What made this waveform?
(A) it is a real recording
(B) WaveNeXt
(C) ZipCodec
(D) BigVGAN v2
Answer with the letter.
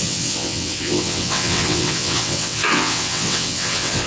B